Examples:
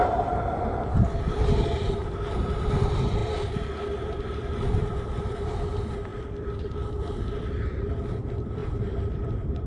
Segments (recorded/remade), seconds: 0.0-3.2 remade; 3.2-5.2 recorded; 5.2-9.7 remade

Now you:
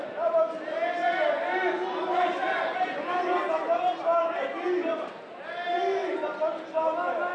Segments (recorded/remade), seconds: 0.0-6.0 recorded; 6.0-6.6 remade; 6.6-7.3 recorded

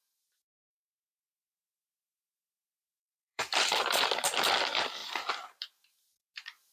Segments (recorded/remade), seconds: 0.0-3.0 recorded; 3.0-4.1 remade; 4.1-5.0 recorded; 5.0-6.2 remade; 6.2-6.7 recorded

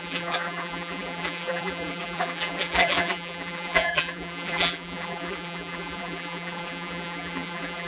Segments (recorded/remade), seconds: 0.0-7.9 remade

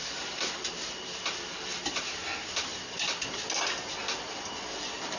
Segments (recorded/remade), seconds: 0.0-5.2 recorded